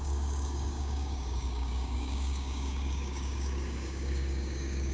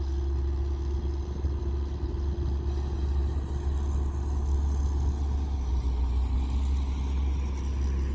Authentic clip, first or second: second